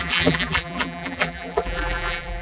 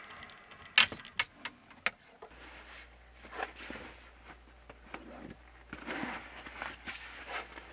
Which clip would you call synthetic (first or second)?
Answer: first